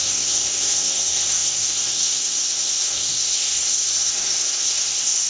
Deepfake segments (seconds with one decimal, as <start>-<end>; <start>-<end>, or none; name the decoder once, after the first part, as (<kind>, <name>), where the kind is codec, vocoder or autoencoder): 0.0-5.3 (codec, SNAC)